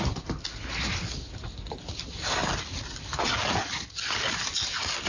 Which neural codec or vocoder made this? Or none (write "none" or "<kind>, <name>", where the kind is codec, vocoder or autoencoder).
none